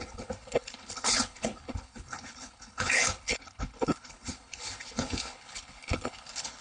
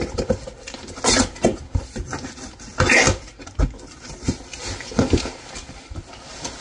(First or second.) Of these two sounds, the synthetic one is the first